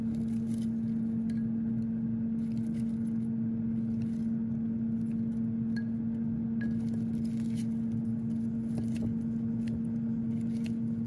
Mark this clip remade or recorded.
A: recorded